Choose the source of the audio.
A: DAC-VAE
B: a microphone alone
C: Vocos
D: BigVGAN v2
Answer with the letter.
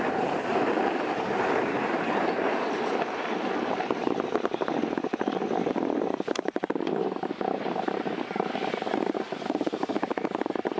D